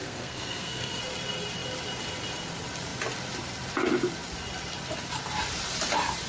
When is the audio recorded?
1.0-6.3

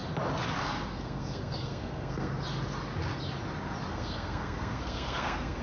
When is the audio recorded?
0.0-0.6; 2.3-3.9

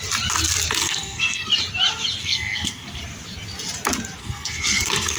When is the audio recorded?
0.0-0.8; 1.5-2.2; 3.0-4.2

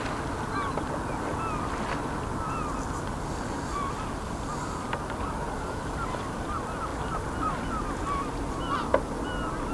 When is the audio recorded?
0.0-9.7